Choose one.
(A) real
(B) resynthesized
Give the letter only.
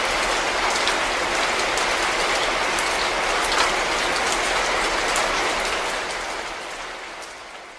A